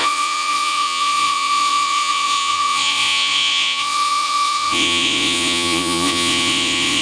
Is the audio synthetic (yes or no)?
yes